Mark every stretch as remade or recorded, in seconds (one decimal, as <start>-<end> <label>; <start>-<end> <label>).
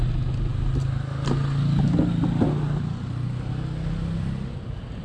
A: 0.0-5.0 recorded